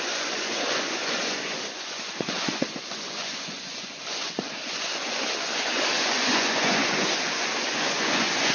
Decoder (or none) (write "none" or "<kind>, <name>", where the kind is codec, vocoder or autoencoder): vocoder, Vocos